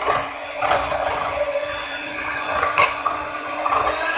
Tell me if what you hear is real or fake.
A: fake